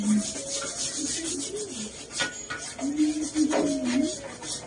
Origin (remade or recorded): recorded